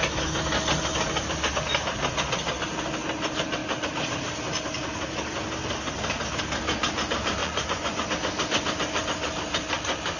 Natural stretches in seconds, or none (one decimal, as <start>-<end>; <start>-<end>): 0.0-7.4; 8.1-10.2